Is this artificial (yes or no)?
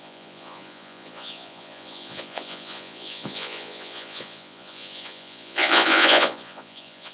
yes